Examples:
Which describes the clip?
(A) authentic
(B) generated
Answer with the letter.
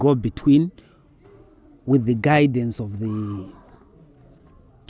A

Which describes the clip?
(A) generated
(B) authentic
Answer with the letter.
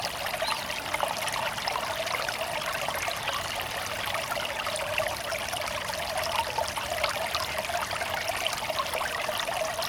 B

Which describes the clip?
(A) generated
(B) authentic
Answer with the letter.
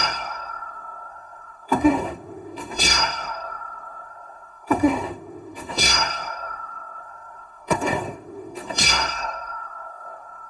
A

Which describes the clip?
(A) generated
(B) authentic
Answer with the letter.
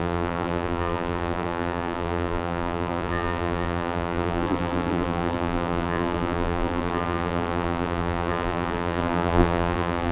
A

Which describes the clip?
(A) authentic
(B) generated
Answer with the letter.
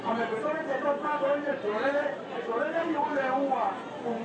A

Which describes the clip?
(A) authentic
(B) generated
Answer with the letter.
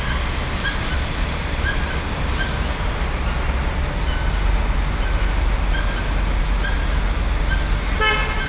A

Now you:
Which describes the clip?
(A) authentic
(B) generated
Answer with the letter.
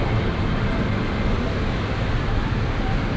A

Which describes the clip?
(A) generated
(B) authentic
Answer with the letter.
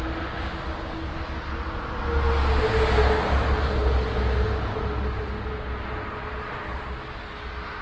B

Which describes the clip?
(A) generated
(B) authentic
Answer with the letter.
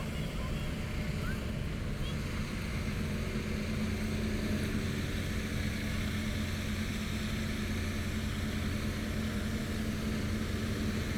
B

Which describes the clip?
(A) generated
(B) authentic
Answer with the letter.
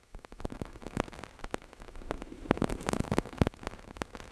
A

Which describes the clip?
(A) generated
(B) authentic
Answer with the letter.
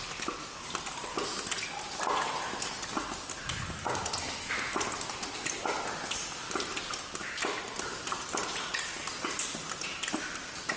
B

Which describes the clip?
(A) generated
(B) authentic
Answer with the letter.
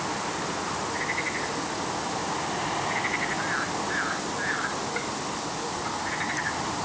B